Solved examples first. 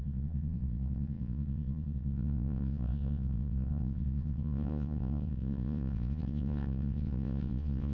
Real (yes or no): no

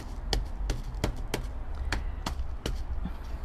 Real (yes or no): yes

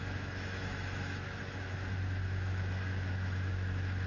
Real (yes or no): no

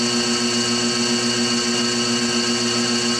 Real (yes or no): yes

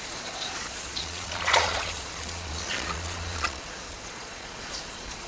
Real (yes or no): no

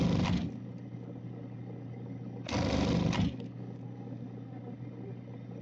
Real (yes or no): yes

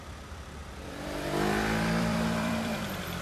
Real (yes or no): no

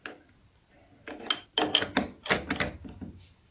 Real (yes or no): yes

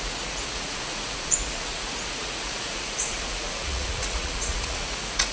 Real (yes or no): no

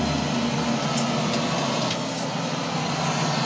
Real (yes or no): yes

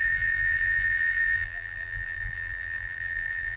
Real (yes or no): no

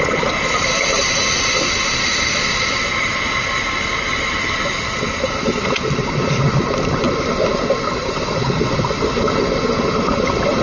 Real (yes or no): yes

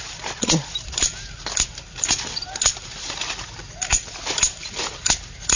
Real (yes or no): yes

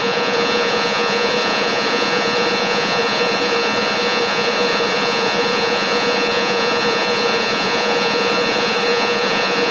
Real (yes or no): no